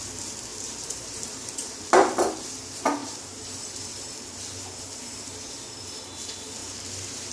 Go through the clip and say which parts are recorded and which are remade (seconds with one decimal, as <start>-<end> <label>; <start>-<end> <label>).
0.0-0.5 recorded; 0.5-1.8 remade; 1.8-3.0 recorded; 3.0-3.8 remade; 3.8-6.6 recorded; 6.6-7.3 remade